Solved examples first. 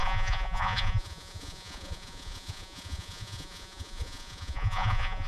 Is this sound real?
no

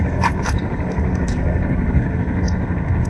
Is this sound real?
no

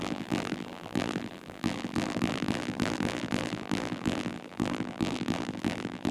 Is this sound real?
no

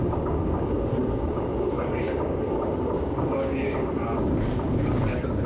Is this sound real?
no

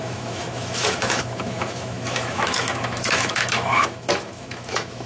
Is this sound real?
no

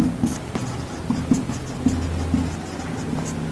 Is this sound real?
yes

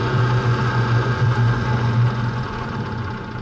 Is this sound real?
no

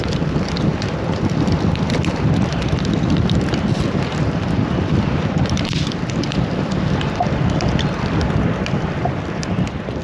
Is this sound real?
no